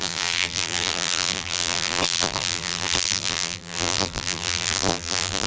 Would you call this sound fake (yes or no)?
yes